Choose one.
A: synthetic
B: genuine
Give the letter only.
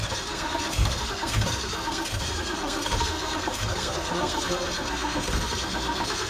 A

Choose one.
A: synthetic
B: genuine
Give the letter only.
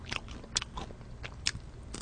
B